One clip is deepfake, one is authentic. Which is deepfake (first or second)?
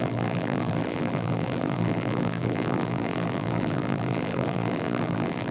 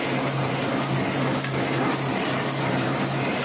first